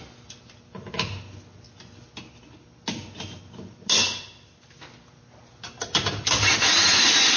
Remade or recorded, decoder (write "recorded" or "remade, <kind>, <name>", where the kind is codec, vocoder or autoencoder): recorded